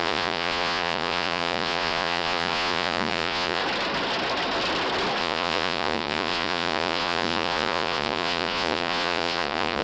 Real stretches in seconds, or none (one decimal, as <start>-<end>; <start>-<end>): 3.6-5.2